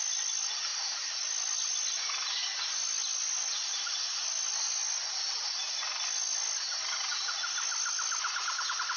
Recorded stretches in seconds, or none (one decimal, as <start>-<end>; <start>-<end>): 0.0-9.0